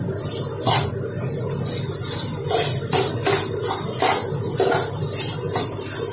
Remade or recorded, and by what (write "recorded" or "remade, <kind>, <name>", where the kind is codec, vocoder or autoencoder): recorded